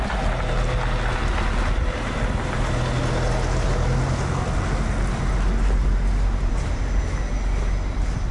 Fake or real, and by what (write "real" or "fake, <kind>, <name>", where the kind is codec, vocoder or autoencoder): real